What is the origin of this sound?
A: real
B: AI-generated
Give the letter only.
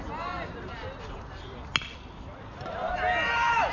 A